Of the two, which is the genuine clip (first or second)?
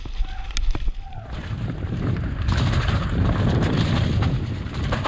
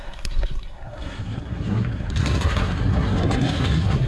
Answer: first